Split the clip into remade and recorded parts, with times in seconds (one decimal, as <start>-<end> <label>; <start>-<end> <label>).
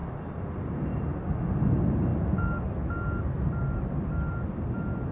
0.0-5.1 recorded